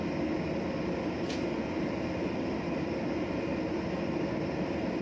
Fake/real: fake